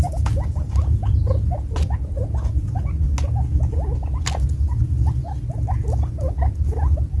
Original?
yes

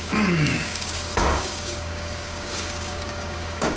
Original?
no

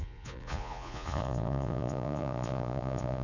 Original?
no